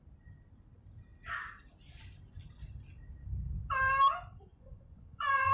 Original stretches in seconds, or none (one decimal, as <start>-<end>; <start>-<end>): 0.0-4.5